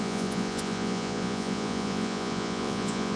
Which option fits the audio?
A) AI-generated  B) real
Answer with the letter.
A